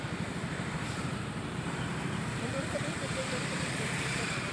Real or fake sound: fake